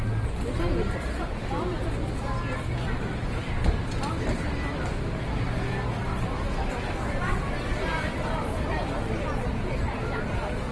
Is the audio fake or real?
real